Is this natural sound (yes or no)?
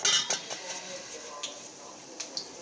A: yes